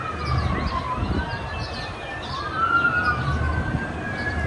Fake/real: real